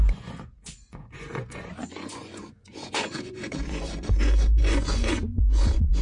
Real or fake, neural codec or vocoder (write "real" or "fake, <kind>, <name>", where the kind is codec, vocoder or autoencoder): fake, vocoder, Vocos